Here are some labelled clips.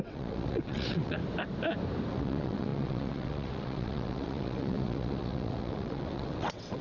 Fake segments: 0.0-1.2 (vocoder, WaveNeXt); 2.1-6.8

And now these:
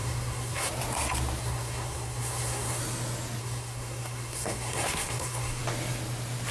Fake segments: 0.0-0.7 (codec, SNAC); 1.4-2.8; 3.4-5.6

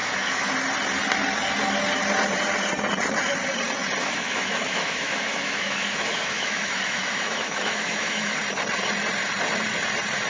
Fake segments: 0.0-0.5 (autoencoder, DAC-VAE); 4.0-8.4

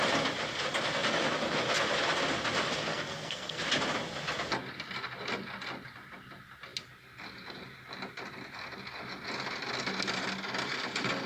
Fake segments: 2.8-3.6 (codec, SNAC)

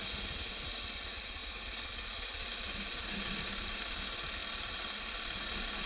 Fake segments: 4.4-5.1 (vocoder, BigVGAN v2)

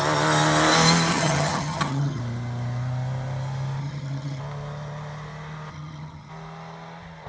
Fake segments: 1.1-2.2 (vocoder, HiFi-GAN); 3.8-4.4; 5.7-6.3